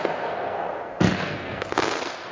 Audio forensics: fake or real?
fake